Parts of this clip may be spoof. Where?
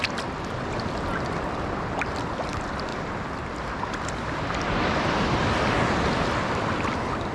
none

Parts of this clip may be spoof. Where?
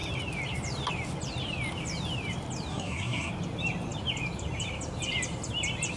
2.7-3.3 (codec, SNAC)